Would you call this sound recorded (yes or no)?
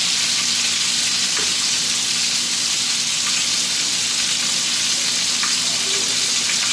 yes